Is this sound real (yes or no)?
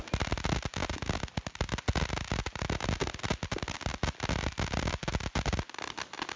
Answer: yes